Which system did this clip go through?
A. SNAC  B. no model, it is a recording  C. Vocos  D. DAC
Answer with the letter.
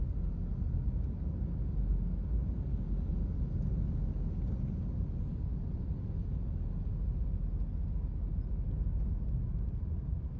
B